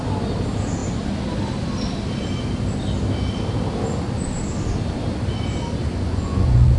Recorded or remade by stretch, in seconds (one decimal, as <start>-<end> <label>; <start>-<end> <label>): 0.0-5.9 recorded; 5.9-6.8 remade